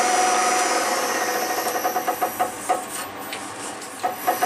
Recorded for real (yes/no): yes